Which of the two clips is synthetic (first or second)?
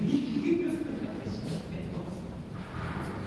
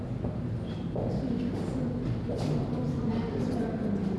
first